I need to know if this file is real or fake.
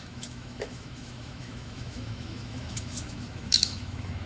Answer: fake